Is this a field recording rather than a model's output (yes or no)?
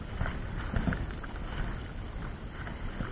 yes